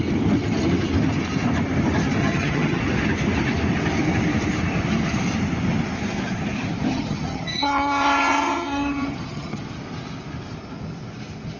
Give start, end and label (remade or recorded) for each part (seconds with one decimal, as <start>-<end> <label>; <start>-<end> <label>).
0.0-2.2 recorded; 2.2-2.8 remade; 2.8-6.9 recorded; 6.9-9.6 remade; 9.6-11.6 recorded